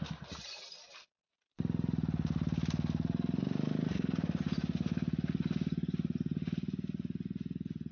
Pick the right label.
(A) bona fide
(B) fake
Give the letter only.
A